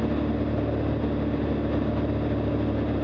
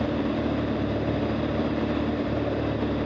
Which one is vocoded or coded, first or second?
second